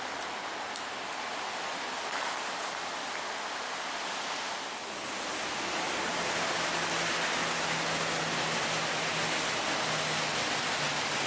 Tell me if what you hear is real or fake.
real